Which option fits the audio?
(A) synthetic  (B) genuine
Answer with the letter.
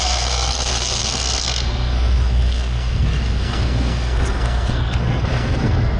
A